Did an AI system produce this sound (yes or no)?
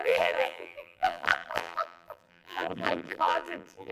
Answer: yes